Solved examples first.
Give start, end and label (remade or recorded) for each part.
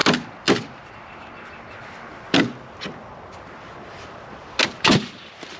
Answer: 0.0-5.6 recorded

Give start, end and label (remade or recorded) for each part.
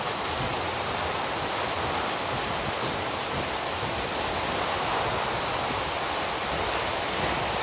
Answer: 0.0-7.6 recorded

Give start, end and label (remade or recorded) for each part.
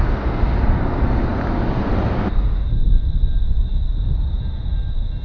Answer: 0.0-5.2 recorded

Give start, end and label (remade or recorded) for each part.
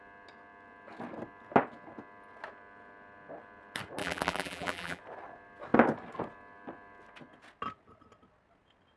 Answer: 0.0-4.0 recorded; 4.0-5.0 remade; 5.0-9.0 recorded